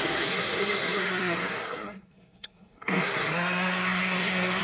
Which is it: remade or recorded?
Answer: remade